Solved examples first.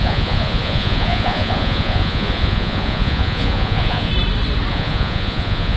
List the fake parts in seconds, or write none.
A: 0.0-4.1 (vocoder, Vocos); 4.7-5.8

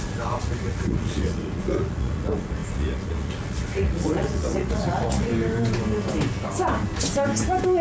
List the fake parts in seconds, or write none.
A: 0.0-5.3 (vocoder, Vocos)

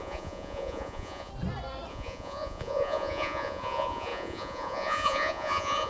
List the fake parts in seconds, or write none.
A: 0.0-1.3 (vocoder, Vocos); 1.9-5.9

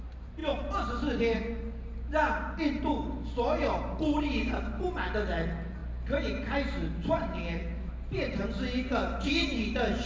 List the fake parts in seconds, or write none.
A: none

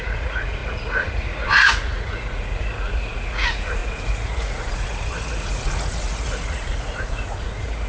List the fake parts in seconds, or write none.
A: 0.0-7.9 (vocoder, Vocos)

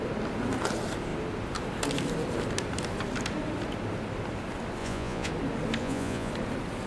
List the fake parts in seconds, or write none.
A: 4.8-5.3 (vocoder, Vocos); 5.8-6.3